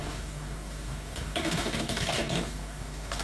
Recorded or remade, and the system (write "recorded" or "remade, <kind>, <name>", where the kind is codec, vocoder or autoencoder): remade, codec, DAC